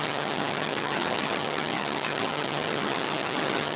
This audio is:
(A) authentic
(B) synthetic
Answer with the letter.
B